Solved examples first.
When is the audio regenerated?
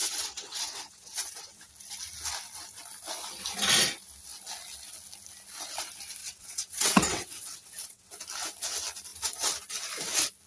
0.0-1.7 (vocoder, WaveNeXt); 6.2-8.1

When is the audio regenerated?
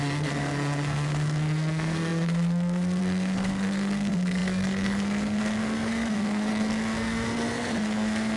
0.0-8.4 (codec, SNAC)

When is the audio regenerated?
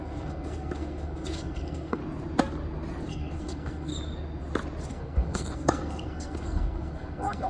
0.0-2.0 (codec, SNAC); 3.1-3.9; 4.9-7.5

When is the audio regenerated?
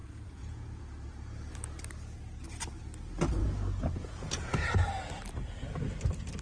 0.0-0.8 (vocoder, Vocos); 3.4-4.7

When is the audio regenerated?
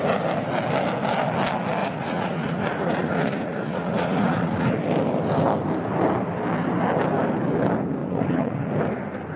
1.8-4.8 (vocoder, Vocos); 8.0-8.7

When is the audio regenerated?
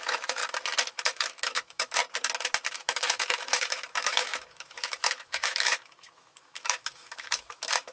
0.0-0.4 (autoencoder, DAC-VAE); 0.9-2.0; 2.7-7.9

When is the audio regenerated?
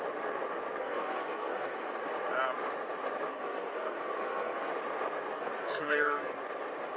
0.8-2.0 (codec, SNAC); 3.3-4.7; 5.3-6.4